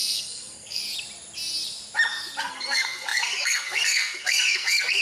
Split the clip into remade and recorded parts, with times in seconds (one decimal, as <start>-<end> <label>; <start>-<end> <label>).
0.0-0.8 remade; 0.8-2.4 recorded; 2.4-5.0 remade